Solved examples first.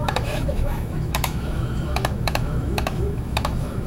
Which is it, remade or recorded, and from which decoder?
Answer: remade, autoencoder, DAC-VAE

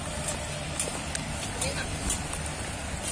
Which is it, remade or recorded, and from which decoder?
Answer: recorded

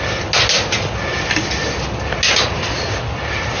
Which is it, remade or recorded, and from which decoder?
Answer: recorded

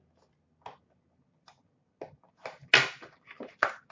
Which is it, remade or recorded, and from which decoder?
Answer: recorded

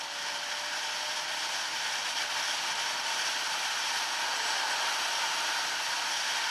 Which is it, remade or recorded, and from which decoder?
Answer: recorded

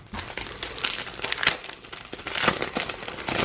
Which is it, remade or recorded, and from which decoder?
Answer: recorded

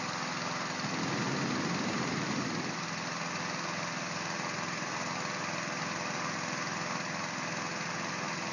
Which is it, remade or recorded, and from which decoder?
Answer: recorded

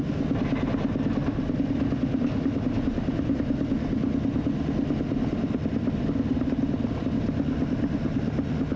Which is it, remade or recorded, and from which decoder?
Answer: recorded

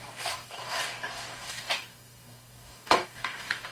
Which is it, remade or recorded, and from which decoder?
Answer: remade, codec, DAC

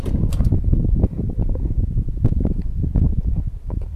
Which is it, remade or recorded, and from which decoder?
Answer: remade, vocoder, BigVGAN v2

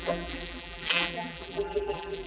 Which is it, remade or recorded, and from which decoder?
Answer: remade, vocoder, BigVGAN v2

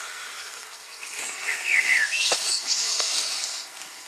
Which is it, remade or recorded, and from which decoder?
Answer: remade, codec, SNAC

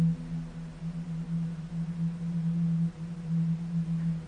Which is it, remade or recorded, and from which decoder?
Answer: recorded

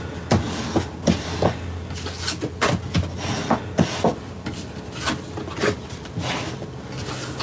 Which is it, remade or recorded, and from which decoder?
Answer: recorded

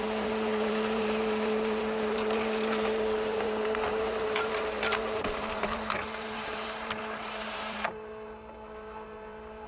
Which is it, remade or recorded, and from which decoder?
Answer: remade, vocoder, BigVGAN v2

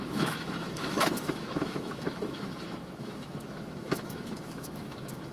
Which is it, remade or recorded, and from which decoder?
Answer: remade, autoencoder, DAC-VAE